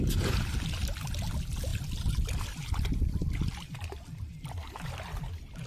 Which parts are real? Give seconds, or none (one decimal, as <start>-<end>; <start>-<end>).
0.0-1.7; 4.3-5.7